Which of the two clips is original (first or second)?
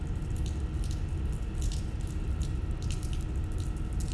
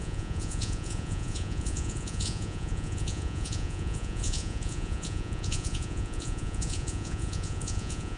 first